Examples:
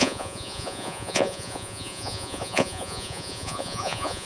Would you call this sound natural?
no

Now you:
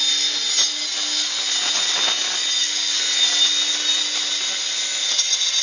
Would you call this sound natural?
yes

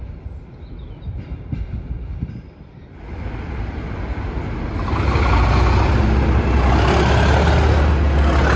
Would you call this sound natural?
yes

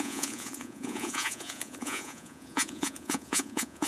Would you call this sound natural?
no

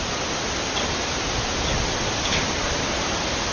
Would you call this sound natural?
yes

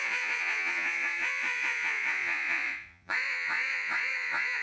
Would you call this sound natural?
no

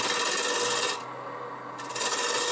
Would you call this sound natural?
yes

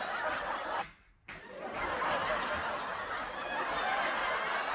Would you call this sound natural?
yes